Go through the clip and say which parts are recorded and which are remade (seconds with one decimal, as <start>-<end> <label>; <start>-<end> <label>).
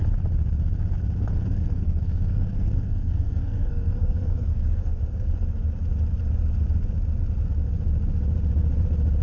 0.0-1.6 recorded; 1.6-5.3 remade; 5.3-9.2 recorded